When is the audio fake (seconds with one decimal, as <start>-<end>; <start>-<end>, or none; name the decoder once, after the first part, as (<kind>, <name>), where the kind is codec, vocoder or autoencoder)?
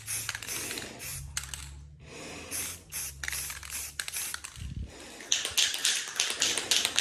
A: 1.1-1.6 (vocoder, BigVGAN v2); 5.8-7.0